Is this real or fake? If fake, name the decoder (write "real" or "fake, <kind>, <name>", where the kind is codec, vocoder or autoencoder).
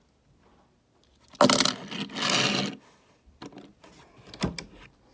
real